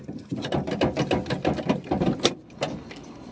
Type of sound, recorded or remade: recorded